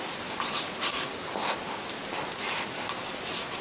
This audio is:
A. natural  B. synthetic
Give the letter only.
A